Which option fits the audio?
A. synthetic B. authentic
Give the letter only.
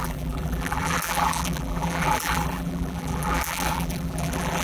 A